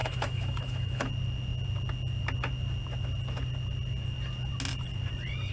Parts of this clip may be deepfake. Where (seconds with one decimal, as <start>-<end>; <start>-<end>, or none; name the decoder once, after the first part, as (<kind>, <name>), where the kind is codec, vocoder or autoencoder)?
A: 0.0-1.1 (autoencoder, DAC-VAE)